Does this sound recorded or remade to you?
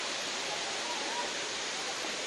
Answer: recorded